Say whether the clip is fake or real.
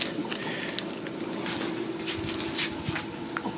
real